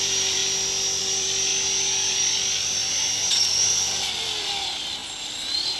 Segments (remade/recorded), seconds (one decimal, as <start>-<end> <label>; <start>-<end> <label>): 0.0-0.4 remade; 0.4-1.0 recorded; 1.0-1.5 remade; 1.5-2.1 recorded; 2.1-5.0 remade; 5.0-5.8 recorded

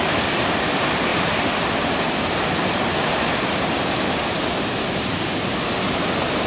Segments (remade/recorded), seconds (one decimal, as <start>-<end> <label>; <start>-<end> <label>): 0.0-6.5 recorded

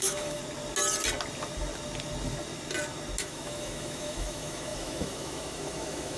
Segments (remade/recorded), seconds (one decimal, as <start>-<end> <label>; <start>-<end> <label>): 0.0-0.4 remade; 0.4-3.2 recorded; 3.2-6.2 remade

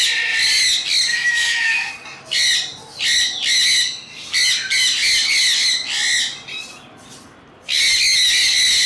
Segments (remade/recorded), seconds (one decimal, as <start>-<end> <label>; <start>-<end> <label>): 0.0-1.1 recorded; 1.1-1.9 remade; 1.9-8.9 recorded

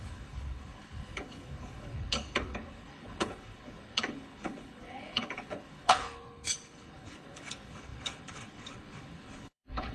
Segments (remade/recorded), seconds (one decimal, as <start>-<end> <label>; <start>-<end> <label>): 0.0-9.9 remade

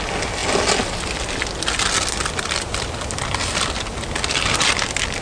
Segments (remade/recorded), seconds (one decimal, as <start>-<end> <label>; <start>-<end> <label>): 0.0-5.2 recorded